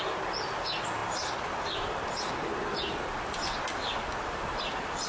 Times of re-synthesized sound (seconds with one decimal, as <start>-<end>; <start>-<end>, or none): none